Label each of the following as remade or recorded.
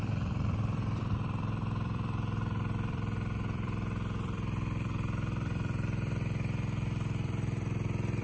remade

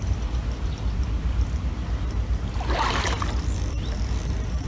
recorded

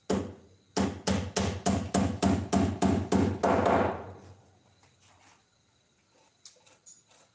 recorded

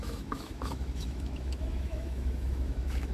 remade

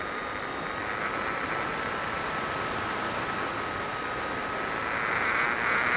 recorded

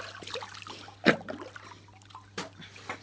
recorded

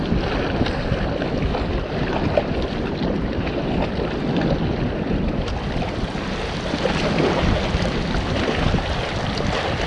recorded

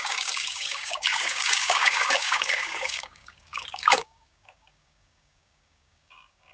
remade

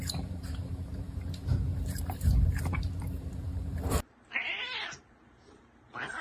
remade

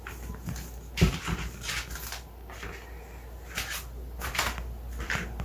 recorded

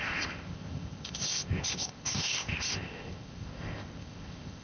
remade